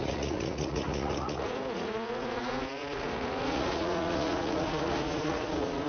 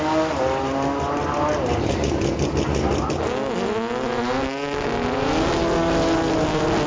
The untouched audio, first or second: second